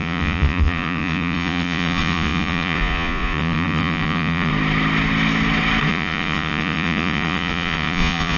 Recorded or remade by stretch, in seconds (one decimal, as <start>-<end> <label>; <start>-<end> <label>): 0.0-4.5 remade; 4.5-5.9 recorded; 5.9-8.4 remade